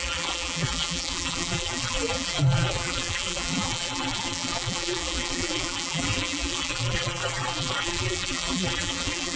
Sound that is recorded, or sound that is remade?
remade